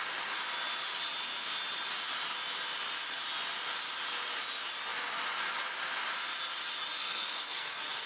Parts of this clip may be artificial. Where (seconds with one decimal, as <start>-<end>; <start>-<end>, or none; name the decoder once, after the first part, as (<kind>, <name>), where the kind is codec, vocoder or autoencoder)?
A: 7.0-8.1 (codec, SNAC)